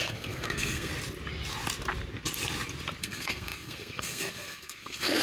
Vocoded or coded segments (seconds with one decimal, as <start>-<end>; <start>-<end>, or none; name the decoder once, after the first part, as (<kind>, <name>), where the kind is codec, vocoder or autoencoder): 0.0-0.9 (codec, SNAC); 3.0-5.2